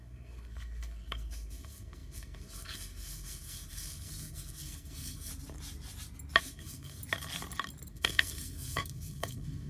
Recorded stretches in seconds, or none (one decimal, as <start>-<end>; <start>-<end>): 5.3-6.4; 7.0-7.9